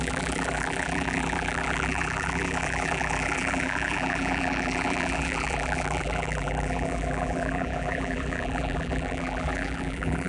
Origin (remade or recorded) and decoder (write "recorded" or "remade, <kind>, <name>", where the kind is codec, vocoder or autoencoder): remade, vocoder, BigVGAN v2